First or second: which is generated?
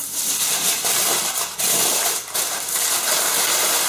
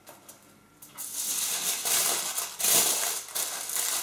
first